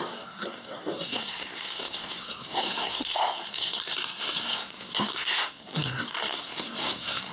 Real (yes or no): no